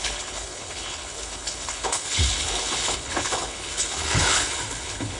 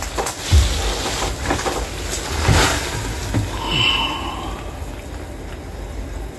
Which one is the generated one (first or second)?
first